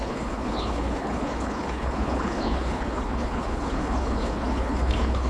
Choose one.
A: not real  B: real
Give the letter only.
A